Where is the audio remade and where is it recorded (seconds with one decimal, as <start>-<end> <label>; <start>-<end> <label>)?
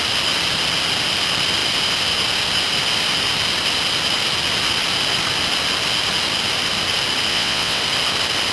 0.0-7.3 recorded; 7.3-7.8 remade; 7.8-8.5 recorded